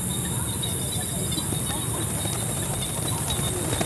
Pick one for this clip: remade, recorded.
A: recorded